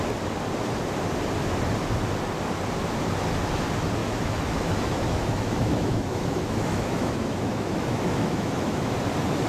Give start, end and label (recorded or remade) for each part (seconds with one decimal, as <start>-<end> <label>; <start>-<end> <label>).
0.0-4.0 recorded; 4.0-8.9 remade; 8.9-9.5 recorded